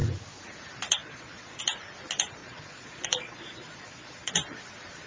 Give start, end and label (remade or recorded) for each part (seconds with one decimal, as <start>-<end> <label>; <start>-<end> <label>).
0.0-1.0 recorded; 1.0-1.6 remade; 1.6-2.4 recorded; 2.4-4.3 remade; 4.3-5.1 recorded